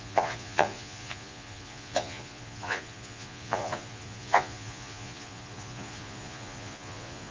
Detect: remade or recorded remade